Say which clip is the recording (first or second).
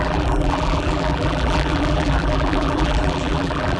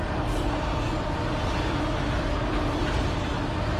second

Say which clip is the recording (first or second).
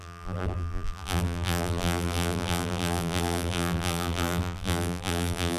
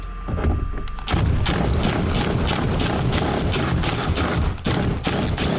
second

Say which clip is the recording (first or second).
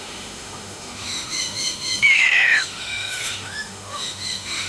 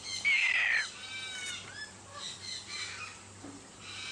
second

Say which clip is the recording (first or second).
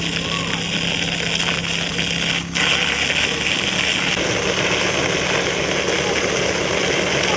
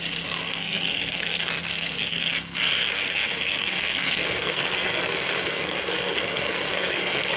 first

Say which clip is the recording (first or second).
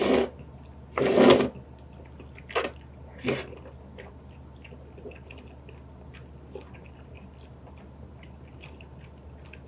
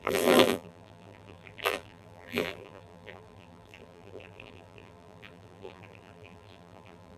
first